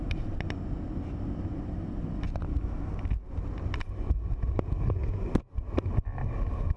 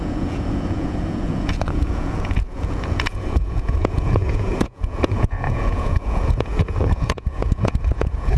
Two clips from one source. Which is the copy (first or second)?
second